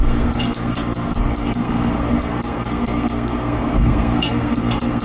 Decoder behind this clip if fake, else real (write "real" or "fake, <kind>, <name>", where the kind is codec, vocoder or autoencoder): fake, codec, SNAC